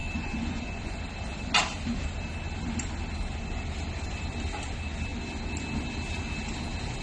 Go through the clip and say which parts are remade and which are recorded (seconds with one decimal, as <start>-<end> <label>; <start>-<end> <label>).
0.0-1.0 remade; 1.0-7.0 recorded